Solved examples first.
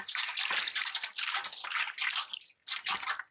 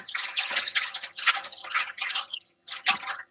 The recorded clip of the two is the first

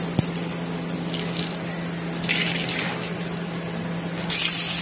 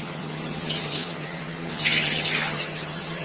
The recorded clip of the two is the first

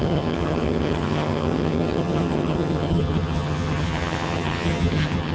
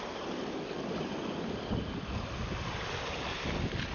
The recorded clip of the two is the second